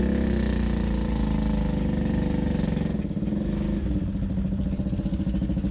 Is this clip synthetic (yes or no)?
no